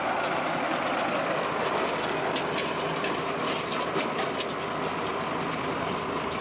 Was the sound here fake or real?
real